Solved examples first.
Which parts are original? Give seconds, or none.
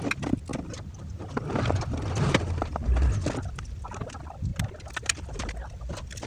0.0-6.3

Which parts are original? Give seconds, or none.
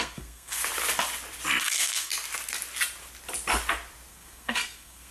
0.6-1.6; 2.1-4.1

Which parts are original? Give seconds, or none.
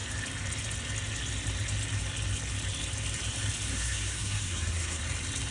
0.0-3.7; 5.0-5.5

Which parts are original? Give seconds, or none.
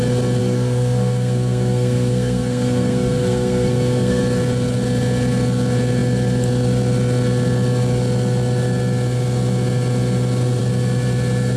0.0-0.4; 4.2-11.6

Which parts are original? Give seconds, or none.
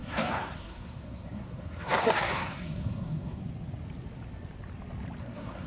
3.4-5.2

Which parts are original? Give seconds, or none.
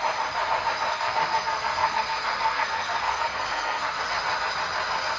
0.0-0.9; 4.0-5.2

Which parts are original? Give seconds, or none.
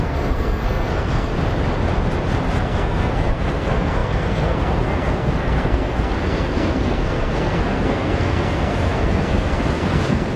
1.3-2.5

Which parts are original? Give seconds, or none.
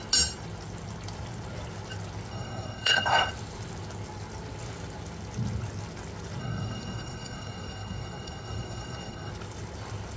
0.0-2.3; 3.3-6.4; 9.3-10.2